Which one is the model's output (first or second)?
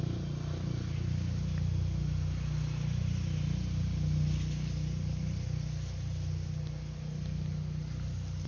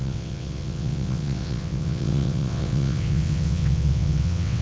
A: second